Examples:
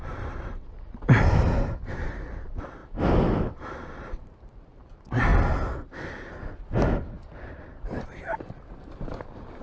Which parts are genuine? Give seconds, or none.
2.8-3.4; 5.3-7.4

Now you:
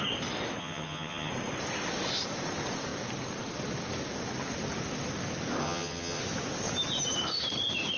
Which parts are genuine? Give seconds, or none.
0.0-0.6; 1.3-5.6; 6.2-8.0

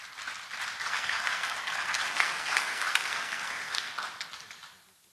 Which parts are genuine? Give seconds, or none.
0.0-0.8; 3.9-5.1

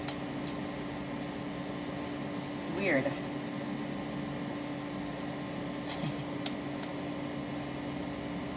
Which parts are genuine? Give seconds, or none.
0.0-8.6